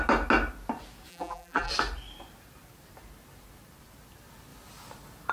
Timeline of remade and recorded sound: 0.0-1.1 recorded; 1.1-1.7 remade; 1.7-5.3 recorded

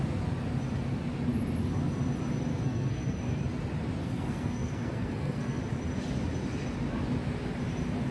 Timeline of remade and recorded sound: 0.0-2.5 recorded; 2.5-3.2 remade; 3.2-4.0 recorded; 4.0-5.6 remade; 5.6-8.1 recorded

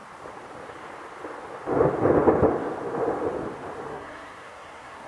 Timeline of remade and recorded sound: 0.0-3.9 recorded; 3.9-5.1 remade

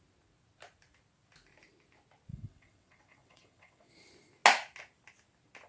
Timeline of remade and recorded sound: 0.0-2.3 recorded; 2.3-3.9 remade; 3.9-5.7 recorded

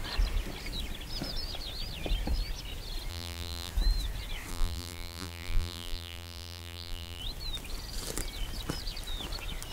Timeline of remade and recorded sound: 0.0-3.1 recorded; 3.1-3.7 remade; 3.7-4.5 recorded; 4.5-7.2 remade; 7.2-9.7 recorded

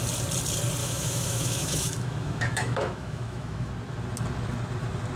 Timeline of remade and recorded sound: 0.0-0.8 recorded; 0.8-3.7 remade; 3.7-5.2 recorded